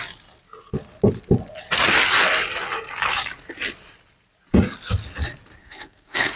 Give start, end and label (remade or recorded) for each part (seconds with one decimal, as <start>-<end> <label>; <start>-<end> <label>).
0.0-5.6 recorded; 5.6-6.4 remade